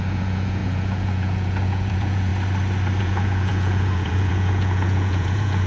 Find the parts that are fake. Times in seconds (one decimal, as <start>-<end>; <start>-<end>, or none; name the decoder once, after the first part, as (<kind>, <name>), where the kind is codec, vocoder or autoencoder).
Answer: 0.0-2.3 (vocoder, Vocos); 3.0-5.7